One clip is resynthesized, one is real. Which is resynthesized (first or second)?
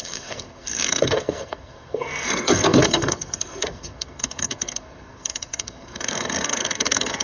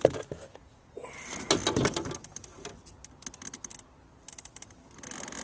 first